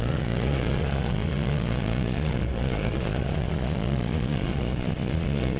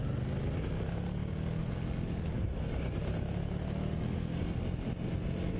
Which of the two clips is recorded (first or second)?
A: second